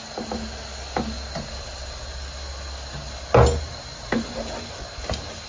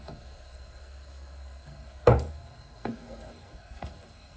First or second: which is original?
first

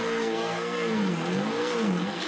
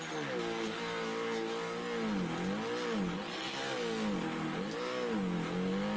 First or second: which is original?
second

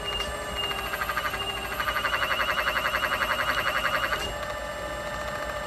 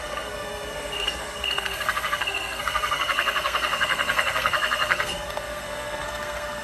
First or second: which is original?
first